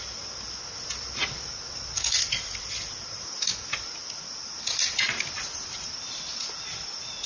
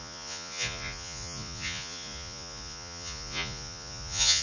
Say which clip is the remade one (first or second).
second